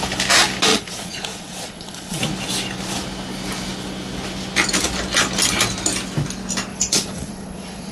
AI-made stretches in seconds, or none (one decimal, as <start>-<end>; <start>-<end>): 0.7-2.2; 6.7-7.9